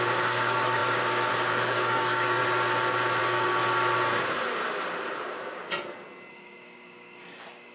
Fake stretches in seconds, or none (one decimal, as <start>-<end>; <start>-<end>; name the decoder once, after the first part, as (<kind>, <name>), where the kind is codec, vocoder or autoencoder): 0.0-2.4 (codec, DAC); 3.2-3.6; 6.3-7.7